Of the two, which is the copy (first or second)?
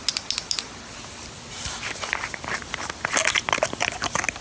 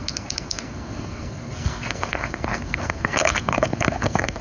second